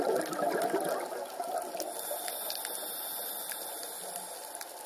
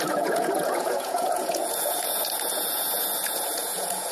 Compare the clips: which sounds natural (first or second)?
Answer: first